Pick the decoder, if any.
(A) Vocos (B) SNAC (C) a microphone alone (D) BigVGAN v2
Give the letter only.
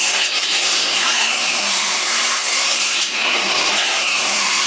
B